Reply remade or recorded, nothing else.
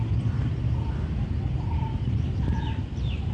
recorded